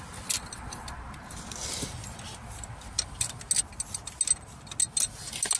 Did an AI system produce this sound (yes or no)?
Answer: no